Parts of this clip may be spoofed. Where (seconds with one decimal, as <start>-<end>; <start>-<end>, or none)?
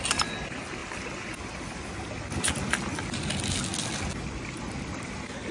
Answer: none